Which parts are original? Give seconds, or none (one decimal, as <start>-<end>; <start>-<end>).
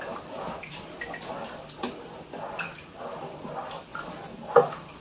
0.0-5.0